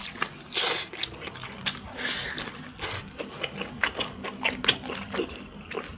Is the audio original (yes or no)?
yes